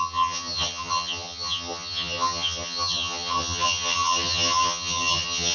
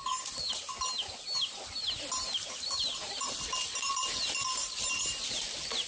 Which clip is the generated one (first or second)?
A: first